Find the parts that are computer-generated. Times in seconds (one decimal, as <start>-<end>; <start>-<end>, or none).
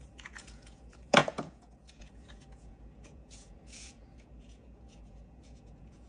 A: 0.0-6.1